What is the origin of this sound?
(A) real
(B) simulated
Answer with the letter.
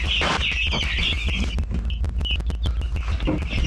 A